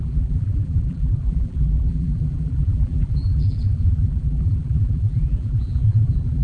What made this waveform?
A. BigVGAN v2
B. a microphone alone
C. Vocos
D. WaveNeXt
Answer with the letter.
A